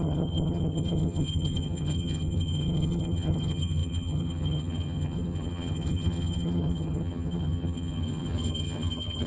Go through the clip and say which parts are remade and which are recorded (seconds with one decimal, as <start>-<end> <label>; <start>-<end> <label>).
0.0-9.3 remade